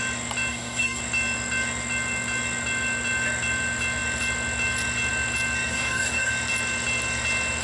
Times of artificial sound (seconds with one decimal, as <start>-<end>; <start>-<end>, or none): 0.5-1.0; 5.7-6.3